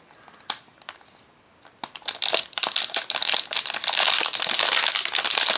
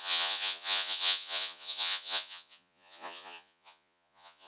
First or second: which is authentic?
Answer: first